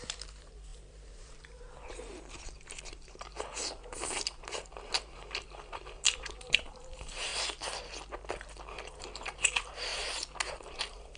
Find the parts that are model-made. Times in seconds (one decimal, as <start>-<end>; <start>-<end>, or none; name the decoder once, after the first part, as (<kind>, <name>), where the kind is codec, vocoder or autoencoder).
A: 0.0-7.3 (vocoder, BigVGAN v2); 8.9-9.9; 10.5-11.2